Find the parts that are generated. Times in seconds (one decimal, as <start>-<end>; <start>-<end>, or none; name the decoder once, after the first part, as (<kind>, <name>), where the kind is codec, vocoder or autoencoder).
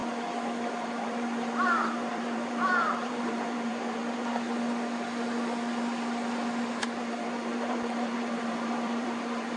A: 0.7-4.0 (vocoder, BigVGAN v2); 6.8-9.6